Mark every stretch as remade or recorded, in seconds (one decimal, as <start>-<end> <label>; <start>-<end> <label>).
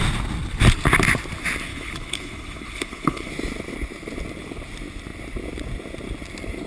0.0-1.7 recorded; 1.7-3.3 remade; 3.3-6.7 recorded